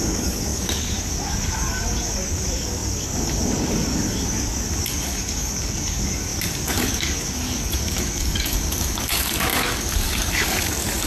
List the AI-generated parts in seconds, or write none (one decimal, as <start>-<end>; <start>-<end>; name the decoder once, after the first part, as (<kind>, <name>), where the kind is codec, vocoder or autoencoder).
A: 0.0-11.1 (codec, DAC)